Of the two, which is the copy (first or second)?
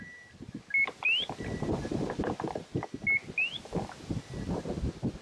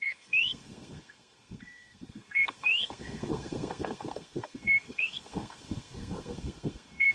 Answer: second